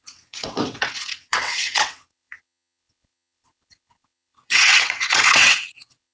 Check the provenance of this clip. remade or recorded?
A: remade